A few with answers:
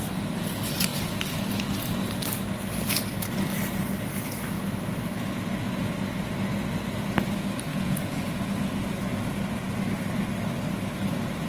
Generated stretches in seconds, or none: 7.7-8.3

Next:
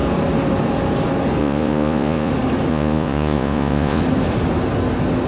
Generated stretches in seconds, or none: 1.4-2.3; 2.7-4.0

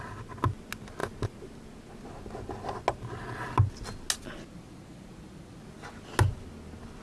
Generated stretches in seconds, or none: none